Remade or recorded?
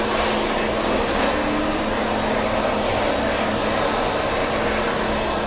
recorded